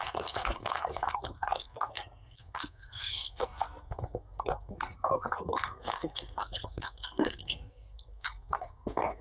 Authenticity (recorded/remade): remade